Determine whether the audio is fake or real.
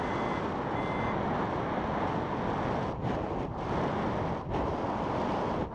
real